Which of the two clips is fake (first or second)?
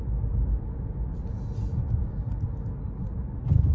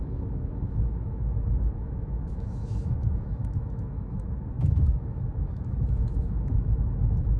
second